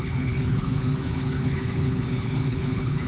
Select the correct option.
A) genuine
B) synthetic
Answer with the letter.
B